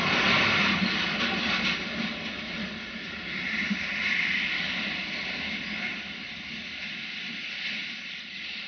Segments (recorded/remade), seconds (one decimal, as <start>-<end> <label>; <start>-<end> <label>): 0.0-8.7 recorded